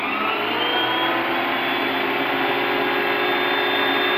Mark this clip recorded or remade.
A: recorded